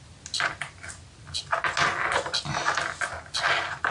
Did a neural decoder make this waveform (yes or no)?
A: no